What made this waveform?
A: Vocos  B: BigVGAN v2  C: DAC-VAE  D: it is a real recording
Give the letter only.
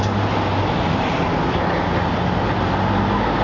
D